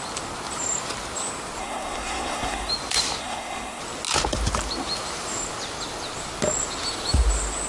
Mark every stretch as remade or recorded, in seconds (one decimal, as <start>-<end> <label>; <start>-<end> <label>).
0.0-1.6 recorded; 1.6-2.7 remade; 2.7-3.2 recorded; 3.2-3.8 remade; 3.8-7.7 recorded